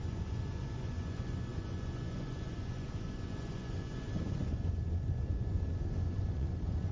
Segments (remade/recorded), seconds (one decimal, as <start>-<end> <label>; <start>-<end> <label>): 0.0-6.9 remade